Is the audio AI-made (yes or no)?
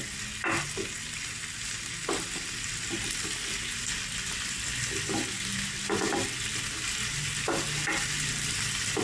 no